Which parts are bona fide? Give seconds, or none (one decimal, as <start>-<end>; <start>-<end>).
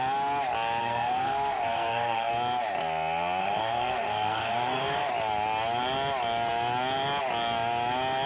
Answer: 0.0-0.8; 2.3-3.4; 5.1-8.3